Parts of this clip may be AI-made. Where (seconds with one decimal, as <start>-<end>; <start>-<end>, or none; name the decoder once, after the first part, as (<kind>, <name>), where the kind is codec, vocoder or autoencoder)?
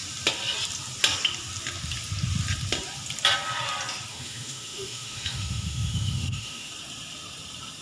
4.1-6.7 (autoencoder, DAC-VAE)